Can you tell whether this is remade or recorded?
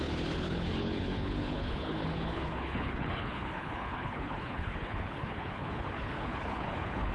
remade